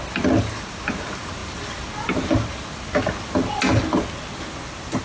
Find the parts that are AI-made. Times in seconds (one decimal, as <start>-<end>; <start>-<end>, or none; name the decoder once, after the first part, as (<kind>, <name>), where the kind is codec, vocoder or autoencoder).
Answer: none